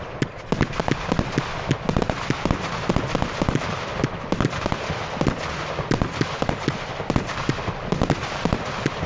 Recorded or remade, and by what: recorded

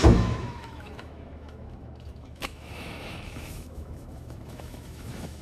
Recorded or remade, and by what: remade, autoencoder, DAC-VAE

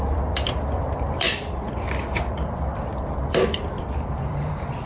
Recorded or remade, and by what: remade, vocoder, BigVGAN v2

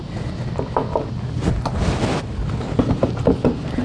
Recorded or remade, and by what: recorded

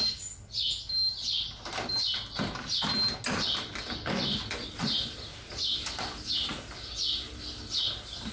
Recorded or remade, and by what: recorded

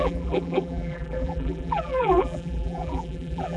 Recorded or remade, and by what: remade, vocoder, BigVGAN v2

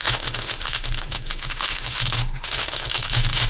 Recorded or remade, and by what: remade, autoencoder, DAC-VAE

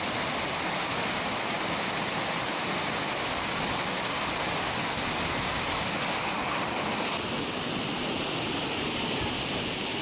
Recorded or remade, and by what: recorded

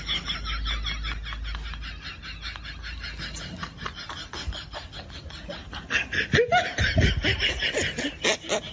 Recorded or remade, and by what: recorded